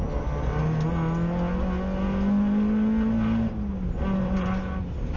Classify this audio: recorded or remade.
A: recorded